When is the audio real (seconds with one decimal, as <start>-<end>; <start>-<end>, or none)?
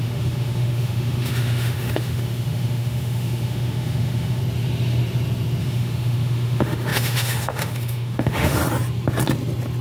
4.4-5.6; 8.6-9.8